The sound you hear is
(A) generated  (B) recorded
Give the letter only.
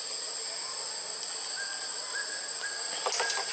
B